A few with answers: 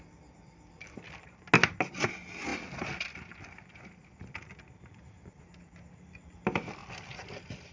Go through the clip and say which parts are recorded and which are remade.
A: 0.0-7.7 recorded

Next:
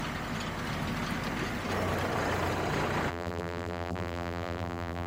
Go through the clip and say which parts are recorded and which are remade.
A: 0.0-3.1 recorded; 3.1-5.1 remade

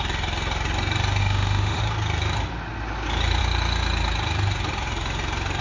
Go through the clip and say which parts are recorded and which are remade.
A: 0.0-1.2 recorded; 1.2-1.8 remade; 1.8-5.6 recorded

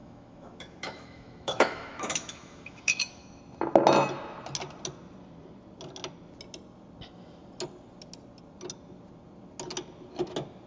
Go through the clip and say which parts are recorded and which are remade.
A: 0.0-3.4 remade; 3.4-10.7 recorded